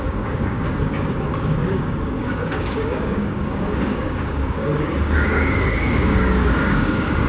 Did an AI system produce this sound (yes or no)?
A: yes